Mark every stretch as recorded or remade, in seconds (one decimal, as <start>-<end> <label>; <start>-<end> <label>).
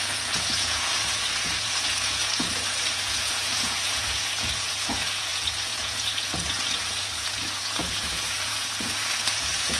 0.0-9.8 remade